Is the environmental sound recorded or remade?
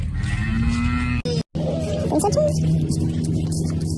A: recorded